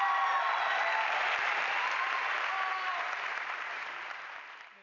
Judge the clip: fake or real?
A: real